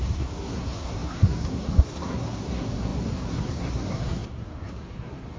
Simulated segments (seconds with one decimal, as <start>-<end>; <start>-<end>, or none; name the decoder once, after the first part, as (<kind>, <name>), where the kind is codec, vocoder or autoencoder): 0.0-5.4 (codec, SNAC)